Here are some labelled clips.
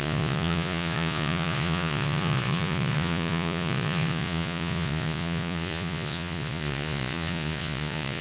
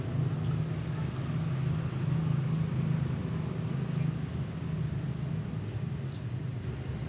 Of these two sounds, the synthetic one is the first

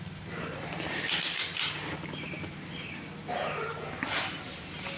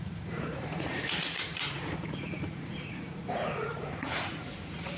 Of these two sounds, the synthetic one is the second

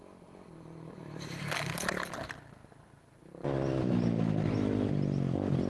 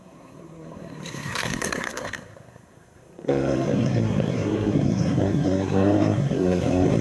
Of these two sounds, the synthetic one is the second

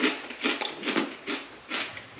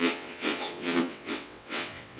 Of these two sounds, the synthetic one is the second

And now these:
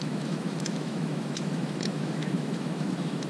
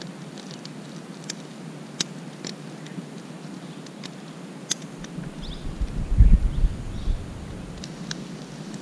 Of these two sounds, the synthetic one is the first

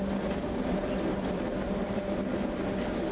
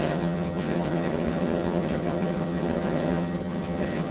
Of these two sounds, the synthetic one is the second